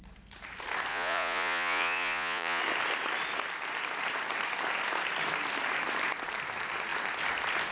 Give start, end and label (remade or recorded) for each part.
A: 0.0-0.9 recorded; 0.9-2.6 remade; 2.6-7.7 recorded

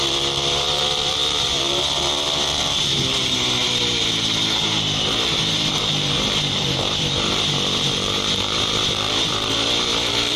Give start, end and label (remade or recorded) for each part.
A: 0.0-10.4 remade

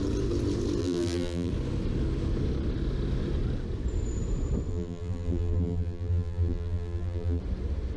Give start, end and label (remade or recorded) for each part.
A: 0.0-0.8 recorded; 0.8-1.5 remade; 1.5-4.7 recorded; 4.7-7.4 remade; 7.4-8.0 recorded

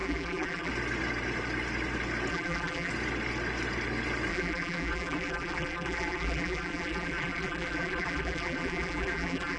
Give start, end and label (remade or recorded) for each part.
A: 0.0-0.7 remade; 0.7-2.3 recorded; 2.3-2.9 remade; 2.9-4.3 recorded; 4.3-9.6 remade

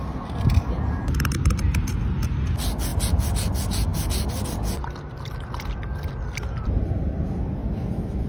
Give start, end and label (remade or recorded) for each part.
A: 0.0-8.3 recorded

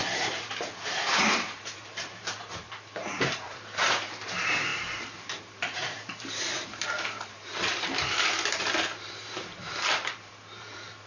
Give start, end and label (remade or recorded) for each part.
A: 0.0-11.1 remade

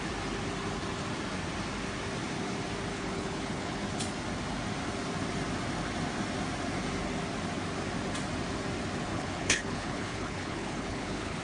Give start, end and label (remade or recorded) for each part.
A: 0.0-2.9 recorded; 2.9-3.8 remade; 3.8-9.1 recorded; 9.1-11.4 remade

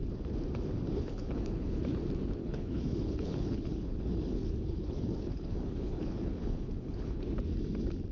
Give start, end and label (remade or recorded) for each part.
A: 0.0-0.9 recorded; 0.9-1.8 remade; 1.8-2.4 recorded; 2.4-7.2 remade; 7.2-8.1 recorded